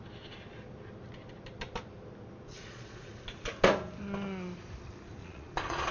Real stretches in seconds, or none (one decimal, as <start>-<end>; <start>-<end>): 0.0-2.5; 3.1-5.2